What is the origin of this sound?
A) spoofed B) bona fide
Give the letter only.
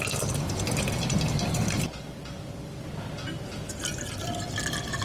A